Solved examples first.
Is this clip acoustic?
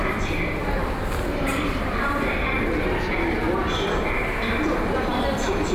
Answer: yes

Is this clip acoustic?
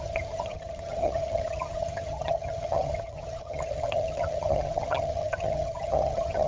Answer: no